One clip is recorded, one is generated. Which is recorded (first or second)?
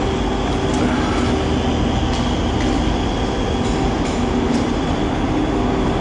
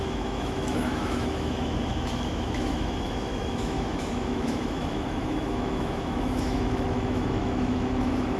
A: first